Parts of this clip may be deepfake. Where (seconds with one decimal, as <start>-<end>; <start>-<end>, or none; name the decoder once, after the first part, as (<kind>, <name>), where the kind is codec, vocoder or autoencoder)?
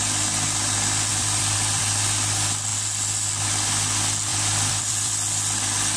1.1-1.8 (vocoder, BigVGAN v2); 4.3-5.1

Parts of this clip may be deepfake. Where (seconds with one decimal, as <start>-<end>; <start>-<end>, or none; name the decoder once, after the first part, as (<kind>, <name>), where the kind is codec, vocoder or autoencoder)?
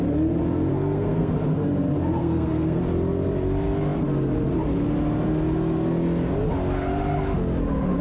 0.7-1.3 (codec, SNAC); 2.2-2.8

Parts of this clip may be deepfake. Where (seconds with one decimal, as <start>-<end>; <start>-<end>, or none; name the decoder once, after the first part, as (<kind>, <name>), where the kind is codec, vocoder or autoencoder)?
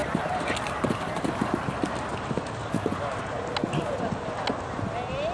none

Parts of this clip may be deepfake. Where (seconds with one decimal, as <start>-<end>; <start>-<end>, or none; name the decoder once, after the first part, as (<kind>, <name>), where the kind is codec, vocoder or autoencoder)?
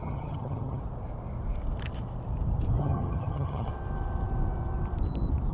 0.0-0.8 (vocoder, HiFi-GAN); 2.8-3.7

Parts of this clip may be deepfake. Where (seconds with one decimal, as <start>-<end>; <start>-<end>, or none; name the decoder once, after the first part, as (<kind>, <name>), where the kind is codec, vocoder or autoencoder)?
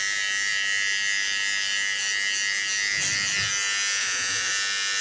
4.0-4.5 (vocoder, Vocos)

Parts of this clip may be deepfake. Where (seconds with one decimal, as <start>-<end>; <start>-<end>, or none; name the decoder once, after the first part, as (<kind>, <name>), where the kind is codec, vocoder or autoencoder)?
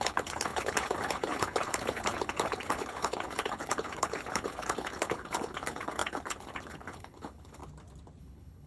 0.0-7.6 (codec, HILCodec); 8.2-8.7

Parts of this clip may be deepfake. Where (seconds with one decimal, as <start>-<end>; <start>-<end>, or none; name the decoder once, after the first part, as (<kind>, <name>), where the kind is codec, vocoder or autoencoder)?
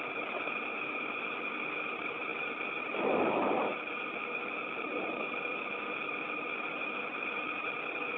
none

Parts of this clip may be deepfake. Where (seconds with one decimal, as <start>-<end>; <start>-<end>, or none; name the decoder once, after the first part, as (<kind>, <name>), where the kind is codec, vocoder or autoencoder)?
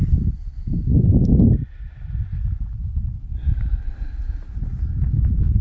none